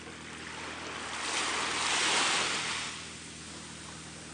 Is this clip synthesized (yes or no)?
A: no